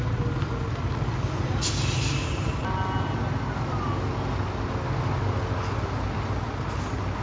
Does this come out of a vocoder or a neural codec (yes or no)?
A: no